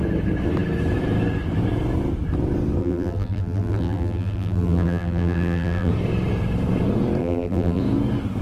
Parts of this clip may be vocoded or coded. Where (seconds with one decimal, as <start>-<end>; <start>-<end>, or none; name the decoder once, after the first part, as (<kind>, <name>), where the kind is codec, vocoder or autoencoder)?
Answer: 2.8-5.9 (vocoder, BigVGAN v2); 7.2-7.8